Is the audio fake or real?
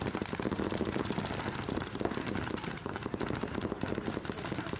real